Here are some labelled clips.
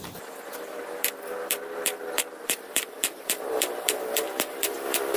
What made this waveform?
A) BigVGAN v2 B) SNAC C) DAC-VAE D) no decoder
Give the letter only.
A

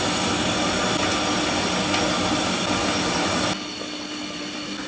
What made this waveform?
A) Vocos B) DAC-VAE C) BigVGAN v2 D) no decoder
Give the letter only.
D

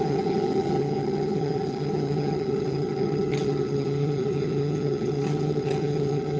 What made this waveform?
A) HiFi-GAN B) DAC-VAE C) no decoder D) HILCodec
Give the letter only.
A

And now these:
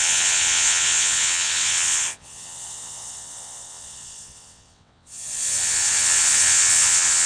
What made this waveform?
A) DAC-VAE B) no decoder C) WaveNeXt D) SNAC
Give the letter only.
C